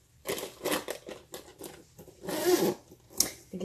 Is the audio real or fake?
real